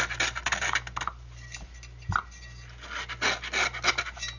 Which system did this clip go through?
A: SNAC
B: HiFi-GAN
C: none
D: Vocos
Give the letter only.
C